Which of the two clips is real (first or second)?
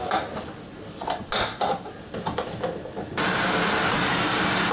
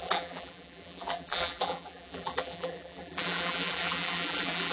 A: first